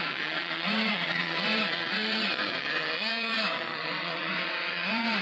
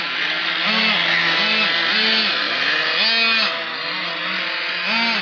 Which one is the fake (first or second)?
first